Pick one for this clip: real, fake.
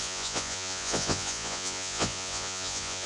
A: fake